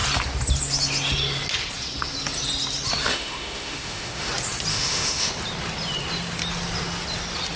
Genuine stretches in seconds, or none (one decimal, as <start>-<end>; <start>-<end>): 0.0-3.1; 4.3-4.7; 5.3-7.6